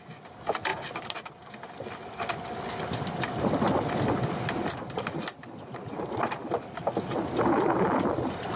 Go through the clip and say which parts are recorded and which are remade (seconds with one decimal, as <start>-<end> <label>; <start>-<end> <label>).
0.0-8.6 recorded